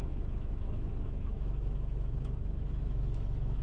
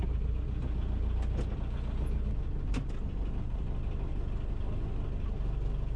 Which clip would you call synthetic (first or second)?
first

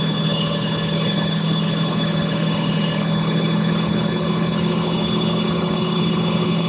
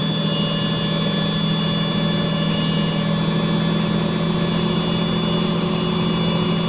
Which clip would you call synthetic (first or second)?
first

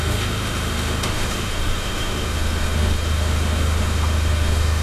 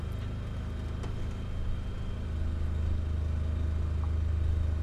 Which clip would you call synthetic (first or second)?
first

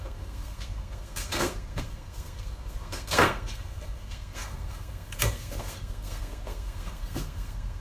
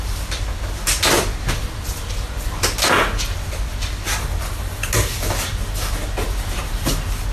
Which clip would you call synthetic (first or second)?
first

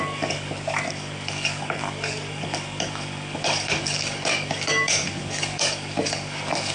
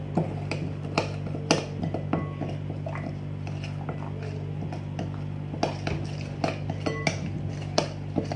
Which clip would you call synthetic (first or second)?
first